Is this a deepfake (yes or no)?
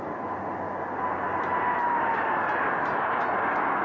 no